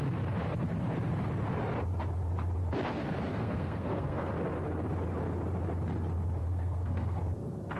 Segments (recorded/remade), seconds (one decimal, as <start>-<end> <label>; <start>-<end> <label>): 0.0-3.3 recorded; 3.3-4.3 remade; 4.3-6.4 recorded; 6.4-7.2 remade; 7.2-7.8 recorded